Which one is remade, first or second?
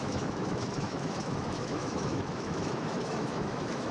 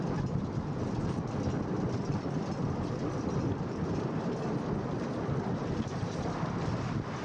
first